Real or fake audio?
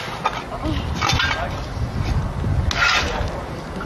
real